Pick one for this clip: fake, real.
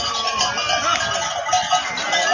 real